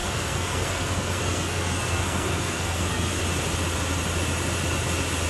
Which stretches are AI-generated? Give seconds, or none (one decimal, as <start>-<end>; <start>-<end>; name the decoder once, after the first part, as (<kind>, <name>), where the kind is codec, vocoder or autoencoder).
0.0-3.2 (codec, SNAC)